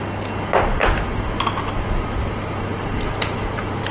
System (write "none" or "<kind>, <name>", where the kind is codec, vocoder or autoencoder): none